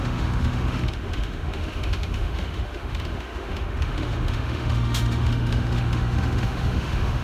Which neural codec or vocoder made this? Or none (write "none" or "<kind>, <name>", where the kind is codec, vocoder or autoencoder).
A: autoencoder, DAC-VAE